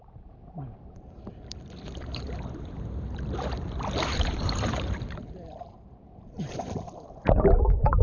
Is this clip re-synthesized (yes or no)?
yes